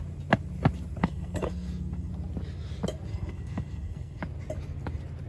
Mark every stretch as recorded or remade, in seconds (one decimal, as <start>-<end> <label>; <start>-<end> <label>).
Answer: 0.0-1.0 recorded; 1.0-2.1 remade; 2.1-3.1 recorded; 3.1-4.2 remade; 4.2-5.3 recorded